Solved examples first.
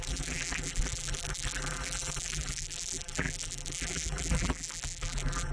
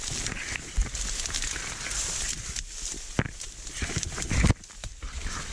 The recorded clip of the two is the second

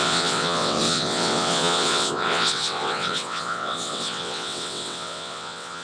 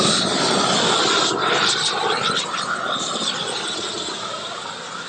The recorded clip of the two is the second